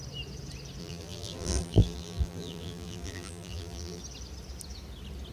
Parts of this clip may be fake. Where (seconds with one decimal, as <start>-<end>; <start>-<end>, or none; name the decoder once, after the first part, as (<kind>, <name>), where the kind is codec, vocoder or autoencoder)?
0.8-4.0 (vocoder, BigVGAN v2)